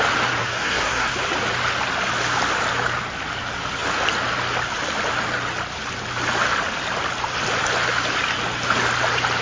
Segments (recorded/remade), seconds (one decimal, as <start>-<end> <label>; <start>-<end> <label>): 0.0-0.4 recorded; 0.4-1.1 remade; 1.1-9.4 recorded